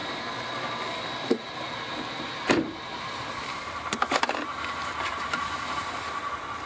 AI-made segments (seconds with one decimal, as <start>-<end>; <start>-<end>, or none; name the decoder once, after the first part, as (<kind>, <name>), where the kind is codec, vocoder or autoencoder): 1.0-6.7 (vocoder, BigVGAN v2)